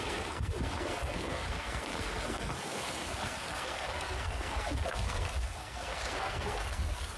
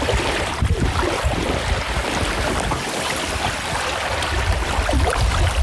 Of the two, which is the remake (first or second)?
first